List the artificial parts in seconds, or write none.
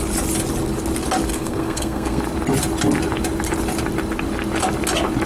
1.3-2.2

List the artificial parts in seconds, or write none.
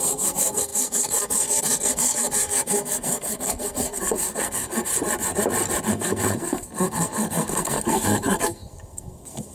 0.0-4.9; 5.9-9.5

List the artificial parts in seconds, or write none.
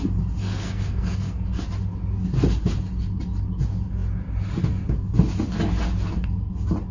0.4-1.6